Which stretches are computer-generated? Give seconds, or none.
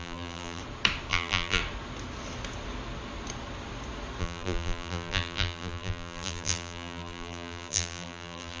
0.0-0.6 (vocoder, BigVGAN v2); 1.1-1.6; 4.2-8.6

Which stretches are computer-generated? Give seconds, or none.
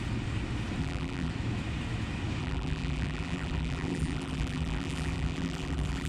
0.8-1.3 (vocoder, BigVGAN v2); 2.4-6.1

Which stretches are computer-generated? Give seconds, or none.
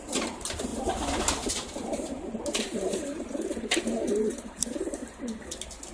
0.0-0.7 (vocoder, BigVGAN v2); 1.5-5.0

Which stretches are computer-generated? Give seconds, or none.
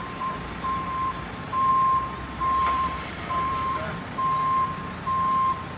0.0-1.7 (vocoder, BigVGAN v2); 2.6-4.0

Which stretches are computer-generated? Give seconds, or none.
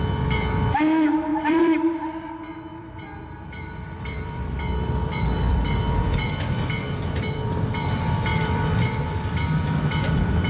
1.3-2.3 (vocoder, BigVGAN v2); 2.7-7.7; 8.3-10.5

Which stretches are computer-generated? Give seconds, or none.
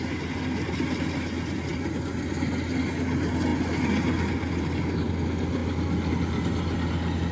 none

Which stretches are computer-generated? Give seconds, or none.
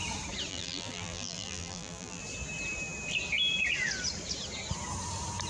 0.5-2.2 (vocoder, BigVGAN v2)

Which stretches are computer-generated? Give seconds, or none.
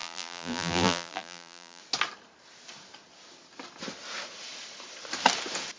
0.0-1.8 (vocoder, BigVGAN v2)